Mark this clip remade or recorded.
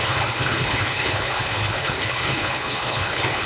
remade